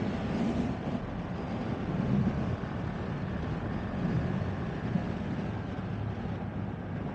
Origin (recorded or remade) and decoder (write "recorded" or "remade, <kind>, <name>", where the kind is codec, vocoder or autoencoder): recorded